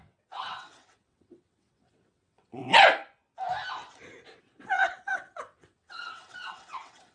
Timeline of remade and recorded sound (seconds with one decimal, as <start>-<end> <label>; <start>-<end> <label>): 0.0-2.6 remade; 2.6-4.4 recorded; 4.4-7.1 remade